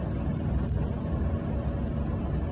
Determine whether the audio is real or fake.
real